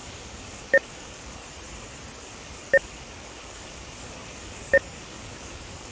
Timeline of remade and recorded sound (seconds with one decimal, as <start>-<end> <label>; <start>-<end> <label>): 0.0-1.4 remade; 1.4-2.3 recorded; 2.3-5.9 remade